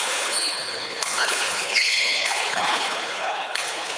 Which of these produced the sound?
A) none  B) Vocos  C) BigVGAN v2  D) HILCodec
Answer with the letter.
D